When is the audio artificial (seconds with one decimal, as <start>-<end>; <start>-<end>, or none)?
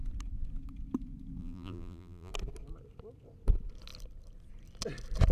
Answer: 1.4-2.3